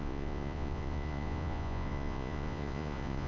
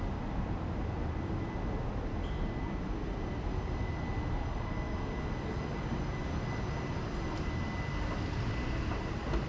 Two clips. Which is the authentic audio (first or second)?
second